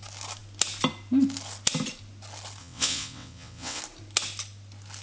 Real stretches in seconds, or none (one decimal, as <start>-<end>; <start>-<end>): 0.0-2.6; 3.8-5.0